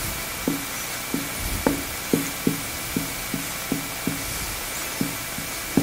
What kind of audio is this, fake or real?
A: real